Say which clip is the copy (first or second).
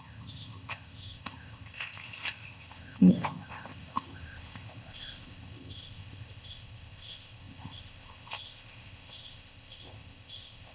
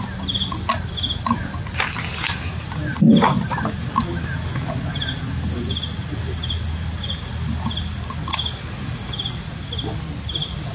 first